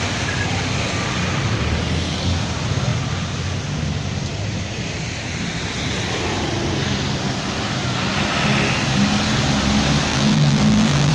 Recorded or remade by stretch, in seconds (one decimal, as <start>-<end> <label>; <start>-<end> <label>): 0.0-10.1 recorded; 10.1-11.1 remade

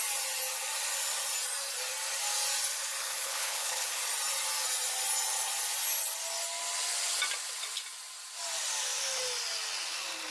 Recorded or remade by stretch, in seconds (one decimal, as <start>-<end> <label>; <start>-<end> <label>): 0.0-3.0 recorded; 3.0-4.0 remade; 4.0-10.3 recorded

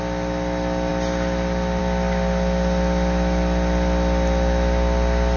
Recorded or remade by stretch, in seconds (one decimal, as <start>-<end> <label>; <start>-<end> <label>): 0.0-5.4 recorded

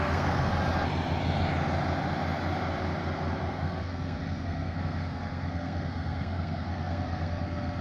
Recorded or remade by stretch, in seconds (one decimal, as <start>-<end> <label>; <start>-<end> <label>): 0.0-0.5 remade; 0.5-3.5 recorded; 3.5-7.8 remade

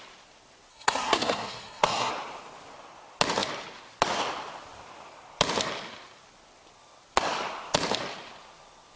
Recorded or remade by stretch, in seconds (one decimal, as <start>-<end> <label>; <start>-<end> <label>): 0.0-0.7 recorded; 0.7-2.1 remade; 2.1-9.0 recorded

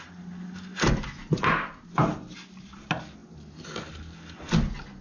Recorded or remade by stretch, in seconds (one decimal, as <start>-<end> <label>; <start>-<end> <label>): 0.0-5.0 recorded